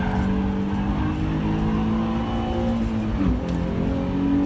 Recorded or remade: recorded